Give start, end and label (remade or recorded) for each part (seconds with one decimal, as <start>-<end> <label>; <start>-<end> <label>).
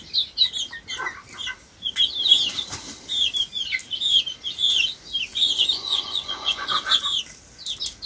0.0-5.3 recorded; 5.3-7.2 remade; 7.2-8.1 recorded